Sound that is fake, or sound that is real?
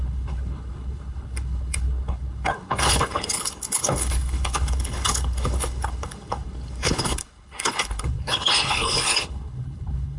fake